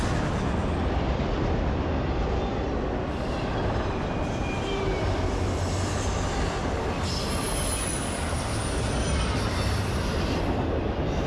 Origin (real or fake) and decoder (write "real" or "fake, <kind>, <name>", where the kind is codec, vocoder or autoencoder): real